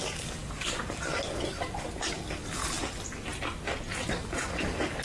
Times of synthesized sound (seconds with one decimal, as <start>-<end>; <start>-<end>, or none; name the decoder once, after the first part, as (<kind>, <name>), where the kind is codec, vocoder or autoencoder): 0.0-2.6 (codec, DAC); 4.1-5.0